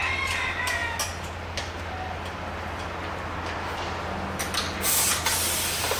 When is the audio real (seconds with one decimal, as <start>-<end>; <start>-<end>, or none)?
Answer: 0.0-6.0

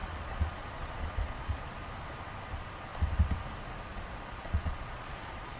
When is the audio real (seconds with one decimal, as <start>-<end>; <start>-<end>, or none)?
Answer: 1.6-3.9

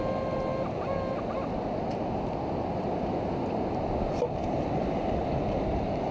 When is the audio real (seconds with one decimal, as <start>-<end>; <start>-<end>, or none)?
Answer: 0.0-6.1

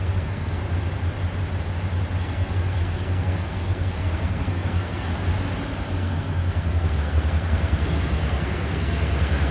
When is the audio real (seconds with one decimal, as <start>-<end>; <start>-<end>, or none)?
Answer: 0.6-2.2; 5.1-5.9

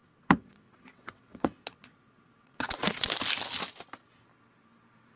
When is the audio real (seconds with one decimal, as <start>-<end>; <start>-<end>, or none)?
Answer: 3.1-5.2

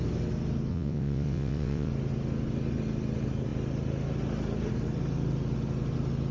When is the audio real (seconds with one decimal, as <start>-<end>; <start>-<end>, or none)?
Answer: 0.0-0.7; 1.9-6.3

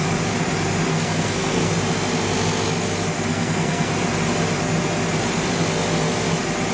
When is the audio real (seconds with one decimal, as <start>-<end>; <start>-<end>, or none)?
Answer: 0.0-0.9; 1.7-3.3; 3.9-6.7

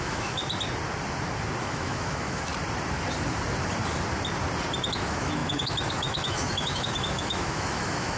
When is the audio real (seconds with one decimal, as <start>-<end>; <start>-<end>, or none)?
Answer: 0.4-1.6; 2.5-4.9